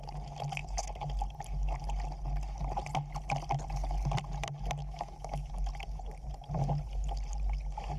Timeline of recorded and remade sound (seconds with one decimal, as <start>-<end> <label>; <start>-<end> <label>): 0.0-4.8 recorded; 4.8-5.5 remade; 5.5-8.0 recorded